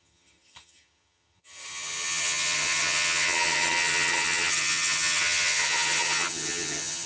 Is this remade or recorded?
remade